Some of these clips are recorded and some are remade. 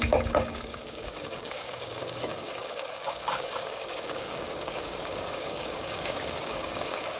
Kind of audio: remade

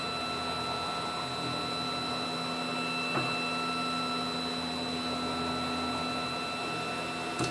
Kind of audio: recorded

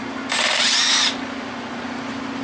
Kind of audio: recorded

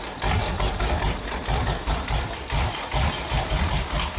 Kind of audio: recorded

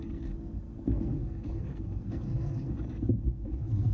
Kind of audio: remade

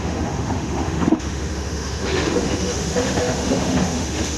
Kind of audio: remade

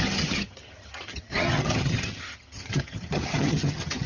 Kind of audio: remade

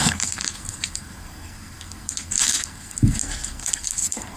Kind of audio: remade